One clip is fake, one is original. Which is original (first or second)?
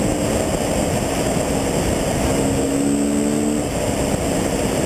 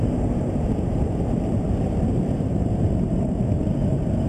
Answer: first